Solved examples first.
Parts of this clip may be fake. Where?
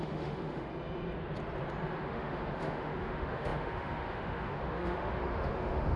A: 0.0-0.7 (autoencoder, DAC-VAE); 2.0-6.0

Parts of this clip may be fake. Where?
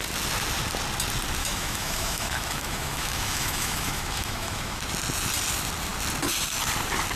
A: 1.4-4.8 (autoencoder, DAC-VAE)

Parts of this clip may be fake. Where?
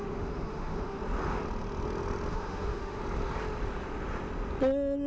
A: 0.0-1.0 (autoencoder, DAC-VAE); 2.3-3.0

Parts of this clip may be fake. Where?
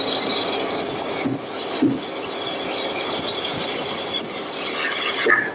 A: none